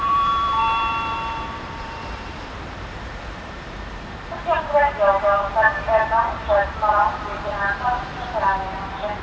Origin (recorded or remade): remade